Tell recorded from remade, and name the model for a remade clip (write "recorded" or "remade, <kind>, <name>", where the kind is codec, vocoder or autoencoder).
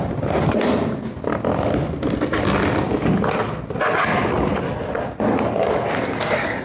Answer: recorded